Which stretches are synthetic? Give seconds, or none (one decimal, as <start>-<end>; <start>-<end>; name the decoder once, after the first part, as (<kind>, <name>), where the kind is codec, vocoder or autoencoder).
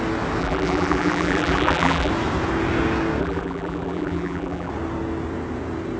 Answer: 0.4-2.1 (vocoder, BigVGAN v2); 3.2-4.7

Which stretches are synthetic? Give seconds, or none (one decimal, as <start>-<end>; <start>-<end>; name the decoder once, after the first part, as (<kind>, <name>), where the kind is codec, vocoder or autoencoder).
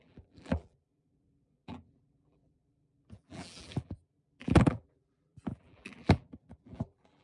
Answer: 0.0-7.2 (vocoder, BigVGAN v2)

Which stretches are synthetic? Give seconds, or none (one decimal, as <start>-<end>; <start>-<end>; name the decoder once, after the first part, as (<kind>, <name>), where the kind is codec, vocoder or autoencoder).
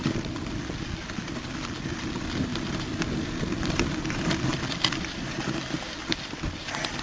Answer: 0.0-7.0 (vocoder, BigVGAN v2)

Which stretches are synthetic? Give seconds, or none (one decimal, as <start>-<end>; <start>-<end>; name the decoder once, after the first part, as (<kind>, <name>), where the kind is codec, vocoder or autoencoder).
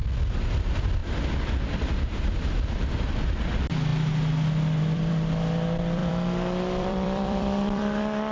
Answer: 0.6-1.0 (vocoder, BigVGAN v2); 1.7-3.9; 4.8-8.3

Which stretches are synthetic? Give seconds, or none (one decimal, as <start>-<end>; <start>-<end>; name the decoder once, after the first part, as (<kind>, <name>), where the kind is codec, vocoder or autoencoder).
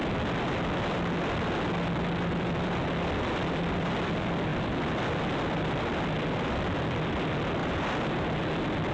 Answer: 1.5-8.9 (vocoder, BigVGAN v2)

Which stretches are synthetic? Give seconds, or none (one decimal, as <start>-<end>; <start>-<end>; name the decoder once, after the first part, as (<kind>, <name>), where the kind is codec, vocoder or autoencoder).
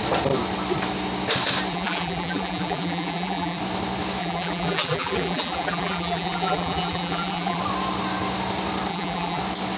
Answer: 1.7-3.6 (vocoder, BigVGAN v2); 4.2-7.6; 8.9-9.4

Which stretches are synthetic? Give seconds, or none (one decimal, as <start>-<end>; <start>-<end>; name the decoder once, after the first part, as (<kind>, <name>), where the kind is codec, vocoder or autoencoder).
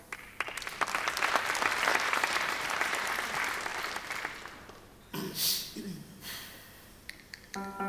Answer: 1.9-3.1 (vocoder, BigVGAN v2)